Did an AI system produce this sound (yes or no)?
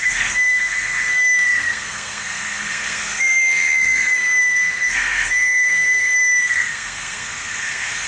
yes